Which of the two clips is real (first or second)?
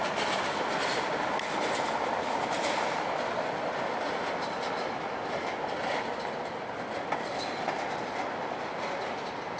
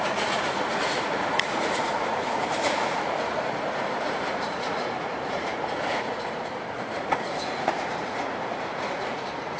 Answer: first